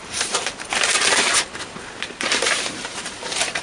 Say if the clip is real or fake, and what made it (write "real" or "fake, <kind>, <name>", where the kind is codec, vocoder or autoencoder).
fake, vocoder, BigVGAN v2